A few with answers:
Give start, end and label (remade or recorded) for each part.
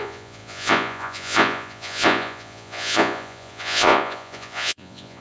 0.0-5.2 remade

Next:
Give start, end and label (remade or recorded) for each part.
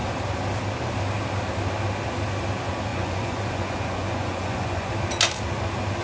0.0-2.9 recorded; 2.9-4.9 remade; 4.9-6.0 recorded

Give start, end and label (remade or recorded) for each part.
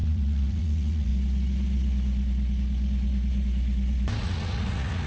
0.0-1.1 remade; 1.1-4.2 recorded; 4.2-5.1 remade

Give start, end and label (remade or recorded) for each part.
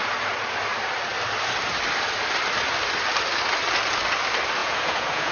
0.0-4.6 recorded; 4.6-5.3 remade